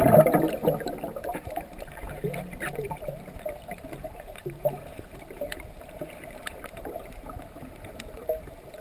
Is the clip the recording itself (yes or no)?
no